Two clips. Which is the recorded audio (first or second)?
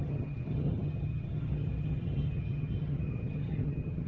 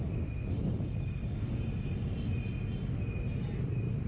second